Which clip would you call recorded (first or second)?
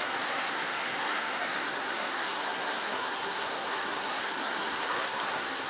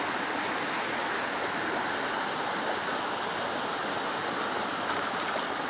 second